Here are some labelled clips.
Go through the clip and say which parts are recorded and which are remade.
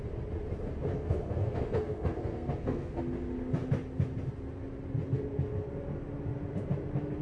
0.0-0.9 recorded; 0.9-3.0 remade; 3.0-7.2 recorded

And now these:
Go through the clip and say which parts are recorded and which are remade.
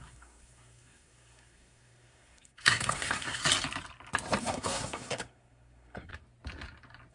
0.0-3.4 remade; 3.4-4.4 recorded; 4.4-6.1 remade; 6.1-7.1 recorded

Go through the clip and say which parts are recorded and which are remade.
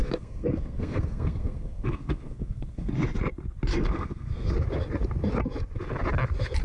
0.0-2.9 remade; 2.9-3.7 recorded; 3.7-4.5 remade; 4.5-6.6 recorded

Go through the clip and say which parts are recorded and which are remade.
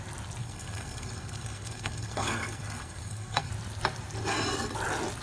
0.0-0.4 recorded; 0.4-3.5 remade; 3.5-5.2 recorded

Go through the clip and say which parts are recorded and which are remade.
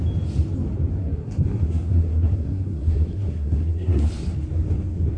0.0-1.0 recorded; 1.0-4.1 remade; 4.1-5.2 recorded